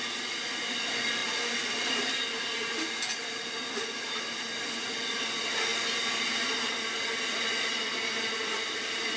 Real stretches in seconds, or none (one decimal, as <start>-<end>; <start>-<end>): 0.0-9.2